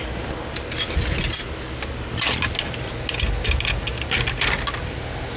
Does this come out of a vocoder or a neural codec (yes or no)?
no